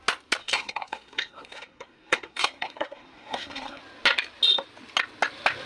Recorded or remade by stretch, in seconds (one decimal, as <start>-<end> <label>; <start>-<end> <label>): 0.0-0.4 recorded; 0.4-3.8 remade; 3.8-5.7 recorded